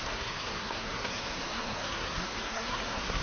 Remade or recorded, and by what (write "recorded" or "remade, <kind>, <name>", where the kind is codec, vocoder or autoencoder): remade, codec, SNAC